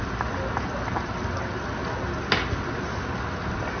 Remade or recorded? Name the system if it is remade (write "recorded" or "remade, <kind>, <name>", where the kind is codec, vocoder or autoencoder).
recorded